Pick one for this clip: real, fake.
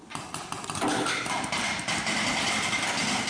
real